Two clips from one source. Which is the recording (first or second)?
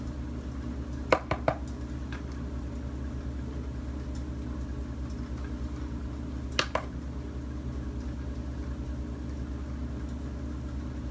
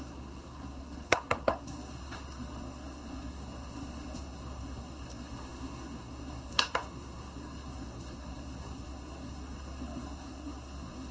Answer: first